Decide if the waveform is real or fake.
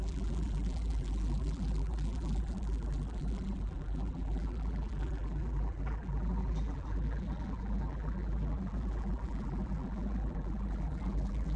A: fake